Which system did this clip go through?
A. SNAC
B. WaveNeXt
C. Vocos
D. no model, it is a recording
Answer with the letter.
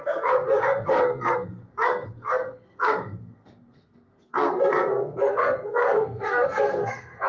A